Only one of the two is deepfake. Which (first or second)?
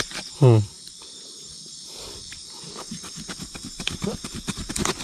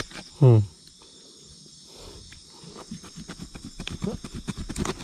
first